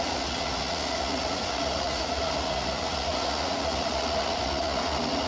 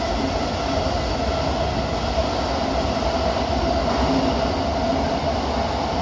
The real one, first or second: second